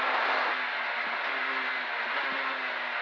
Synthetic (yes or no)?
no